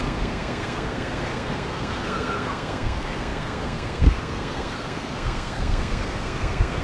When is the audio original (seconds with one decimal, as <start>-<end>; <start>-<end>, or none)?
none